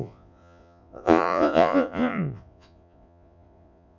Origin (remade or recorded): remade